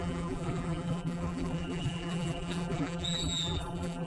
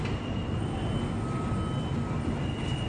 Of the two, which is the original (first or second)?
second